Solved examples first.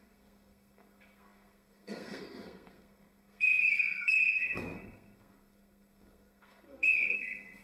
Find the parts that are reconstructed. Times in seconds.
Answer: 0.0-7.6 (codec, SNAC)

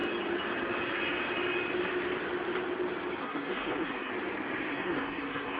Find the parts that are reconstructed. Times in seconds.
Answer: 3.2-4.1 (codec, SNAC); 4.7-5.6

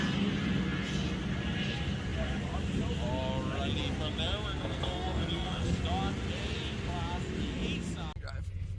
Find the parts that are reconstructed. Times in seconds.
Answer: 4.6-5.8 (codec, SNAC)

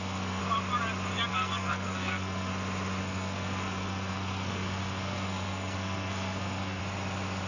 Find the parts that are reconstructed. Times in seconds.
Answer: 0.0-0.4 (codec, SNAC); 1.3-2.5; 3.0-6.8

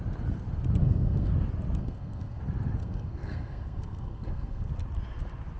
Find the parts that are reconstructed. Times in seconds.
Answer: 0.8-1.3 (codec, SNAC); 1.8-2.4; 2.8-4.7

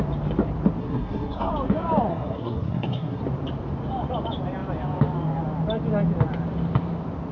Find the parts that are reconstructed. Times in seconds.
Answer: 0.8-1.5 (codec, SNAC); 2.1-3.2